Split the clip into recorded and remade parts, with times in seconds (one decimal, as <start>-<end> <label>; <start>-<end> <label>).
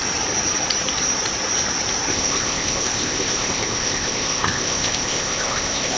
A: 0.0-2.1 recorded; 2.1-6.0 remade